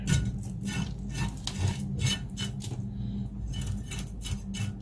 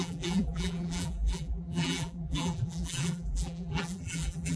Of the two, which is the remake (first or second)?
second